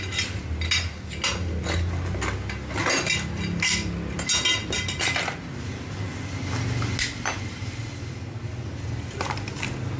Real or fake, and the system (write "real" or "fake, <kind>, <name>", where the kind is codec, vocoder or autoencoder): real